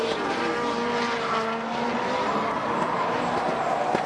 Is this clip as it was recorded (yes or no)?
yes